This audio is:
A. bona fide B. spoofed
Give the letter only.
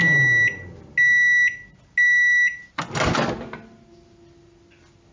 A